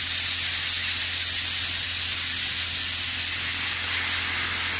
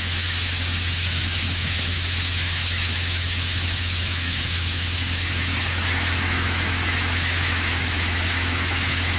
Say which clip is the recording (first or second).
first